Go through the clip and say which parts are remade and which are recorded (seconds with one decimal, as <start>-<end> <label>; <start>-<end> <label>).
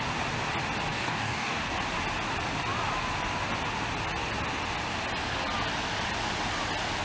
0.0-0.9 recorded; 0.9-1.7 remade; 1.7-7.0 recorded